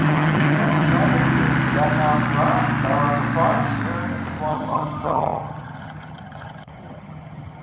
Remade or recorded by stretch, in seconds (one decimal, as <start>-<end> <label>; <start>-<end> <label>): 0.0-0.9 remade; 0.9-4.5 recorded; 4.5-7.6 remade